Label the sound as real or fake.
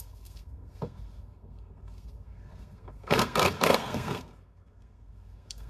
fake